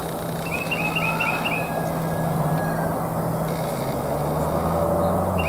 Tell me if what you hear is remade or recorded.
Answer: recorded